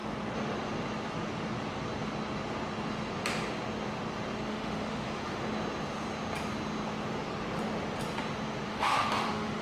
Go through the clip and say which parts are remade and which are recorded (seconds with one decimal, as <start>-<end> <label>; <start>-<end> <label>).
0.0-4.5 recorded; 4.5-5.4 remade; 5.4-8.7 recorded; 8.7-9.6 remade